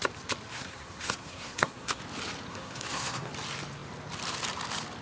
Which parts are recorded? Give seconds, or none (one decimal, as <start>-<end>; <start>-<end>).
0.0-0.5; 2.0-2.5; 3.3-5.0